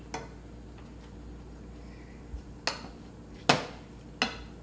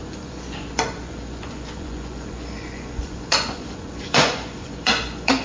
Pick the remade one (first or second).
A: second